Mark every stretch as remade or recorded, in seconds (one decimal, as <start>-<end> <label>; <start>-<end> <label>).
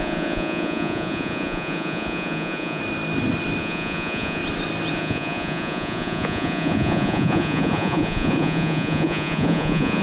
0.0-2.8 remade; 2.8-3.6 recorded; 3.6-4.4 remade; 4.4-4.9 recorded; 4.9-10.0 remade